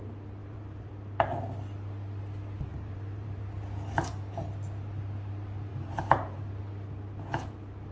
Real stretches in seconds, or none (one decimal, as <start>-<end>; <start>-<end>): 0.0-0.4; 0.9-2.7; 3.4-5.7; 6.5-7.9